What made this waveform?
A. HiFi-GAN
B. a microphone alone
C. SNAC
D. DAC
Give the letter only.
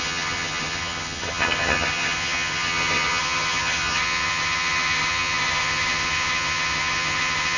A